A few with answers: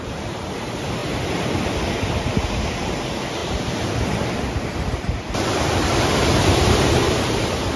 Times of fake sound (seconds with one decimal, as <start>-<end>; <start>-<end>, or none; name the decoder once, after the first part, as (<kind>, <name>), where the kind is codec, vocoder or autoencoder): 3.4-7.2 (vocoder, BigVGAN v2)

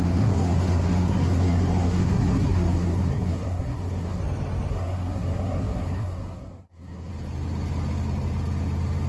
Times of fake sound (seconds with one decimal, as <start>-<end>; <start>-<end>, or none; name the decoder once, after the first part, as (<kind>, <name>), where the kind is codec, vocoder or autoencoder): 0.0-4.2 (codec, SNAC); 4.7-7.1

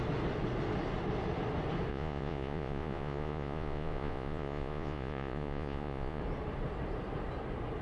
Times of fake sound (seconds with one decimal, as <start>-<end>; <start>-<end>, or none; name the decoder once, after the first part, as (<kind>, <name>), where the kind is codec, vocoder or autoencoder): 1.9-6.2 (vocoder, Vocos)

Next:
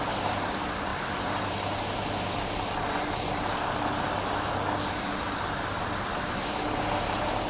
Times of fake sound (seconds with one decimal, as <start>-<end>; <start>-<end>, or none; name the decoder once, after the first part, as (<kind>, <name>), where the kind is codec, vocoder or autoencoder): 0.0-7.5 (vocoder, BigVGAN v2)